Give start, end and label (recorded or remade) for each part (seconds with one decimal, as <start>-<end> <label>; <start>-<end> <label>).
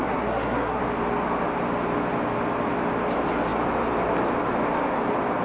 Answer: 0.0-0.8 remade; 0.8-5.4 recorded